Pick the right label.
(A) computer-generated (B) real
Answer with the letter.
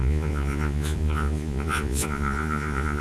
A